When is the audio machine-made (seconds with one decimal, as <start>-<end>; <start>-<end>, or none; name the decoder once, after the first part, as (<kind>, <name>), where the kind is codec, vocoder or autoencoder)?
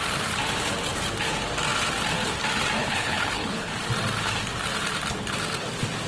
2.8-3.7 (codec, HILCodec)